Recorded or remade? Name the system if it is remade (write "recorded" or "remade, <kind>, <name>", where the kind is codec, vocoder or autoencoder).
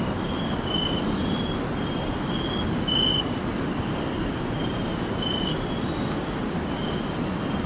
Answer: recorded